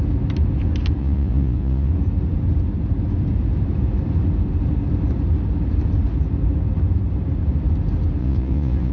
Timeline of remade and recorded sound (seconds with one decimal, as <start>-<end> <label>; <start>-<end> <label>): 0.0-1.0 recorded; 1.0-1.9 remade; 1.9-8.2 recorded; 8.2-8.9 remade